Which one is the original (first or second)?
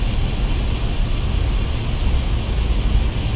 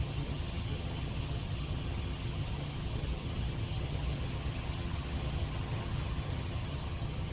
first